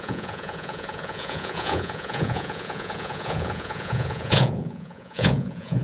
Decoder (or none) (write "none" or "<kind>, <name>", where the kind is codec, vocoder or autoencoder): vocoder, Vocos